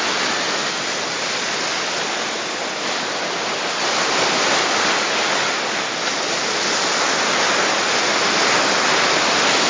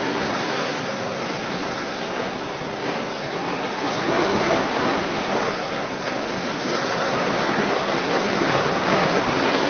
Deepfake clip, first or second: second